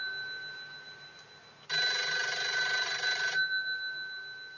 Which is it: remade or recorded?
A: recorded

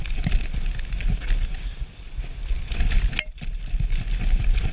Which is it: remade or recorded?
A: recorded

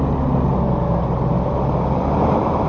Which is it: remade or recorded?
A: recorded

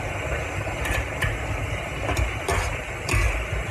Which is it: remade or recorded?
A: recorded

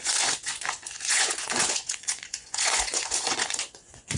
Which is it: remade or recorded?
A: remade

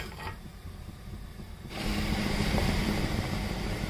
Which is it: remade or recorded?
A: remade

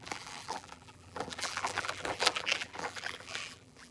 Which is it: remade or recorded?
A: remade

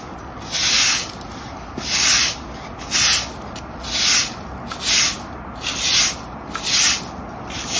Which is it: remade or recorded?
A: recorded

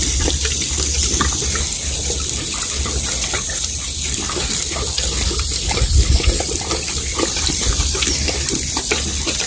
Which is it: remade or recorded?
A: recorded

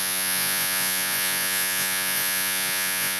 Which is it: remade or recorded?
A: remade